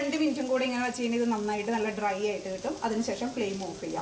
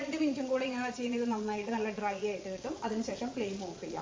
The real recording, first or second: first